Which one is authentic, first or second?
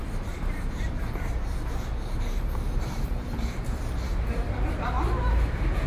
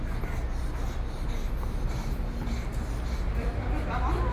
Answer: second